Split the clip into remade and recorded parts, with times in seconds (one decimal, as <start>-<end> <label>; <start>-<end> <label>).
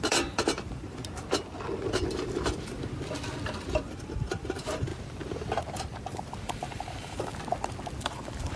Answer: 0.0-1.0 remade; 1.0-3.8 recorded; 3.8-4.9 remade; 4.9-6.4 recorded; 6.4-7.3 remade; 7.3-8.0 recorded; 8.0-8.6 remade